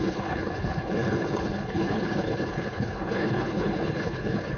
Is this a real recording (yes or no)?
no